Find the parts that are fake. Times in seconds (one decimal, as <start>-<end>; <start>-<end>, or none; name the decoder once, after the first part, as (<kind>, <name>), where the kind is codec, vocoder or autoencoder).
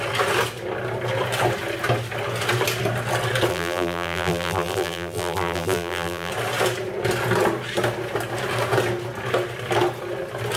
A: 3.5-6.3 (vocoder, BigVGAN v2)